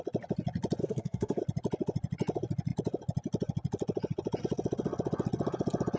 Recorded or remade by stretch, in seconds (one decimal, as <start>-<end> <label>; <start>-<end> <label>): 0.0-0.8 recorded; 0.8-1.4 remade; 1.4-6.0 recorded

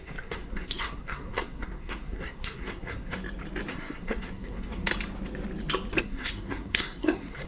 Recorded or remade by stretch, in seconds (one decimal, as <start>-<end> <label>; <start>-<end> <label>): 0.0-3.2 remade; 3.2-3.7 recorded; 3.7-4.9 remade; 4.9-6.0 recorded; 6.0-7.5 remade

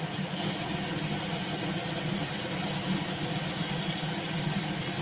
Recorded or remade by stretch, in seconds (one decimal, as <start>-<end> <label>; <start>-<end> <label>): 0.0-5.0 recorded